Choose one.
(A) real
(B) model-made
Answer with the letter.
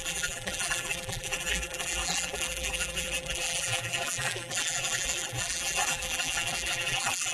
B